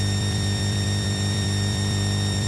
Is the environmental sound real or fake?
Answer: fake